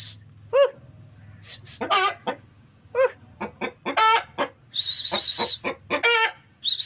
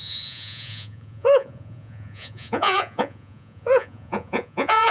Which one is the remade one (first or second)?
second